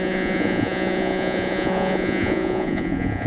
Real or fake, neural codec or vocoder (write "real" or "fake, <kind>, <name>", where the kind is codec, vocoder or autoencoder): fake, vocoder, Vocos